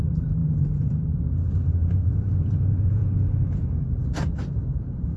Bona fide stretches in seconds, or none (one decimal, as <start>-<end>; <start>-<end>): 3.0-4.3